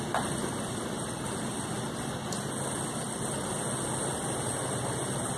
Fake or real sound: real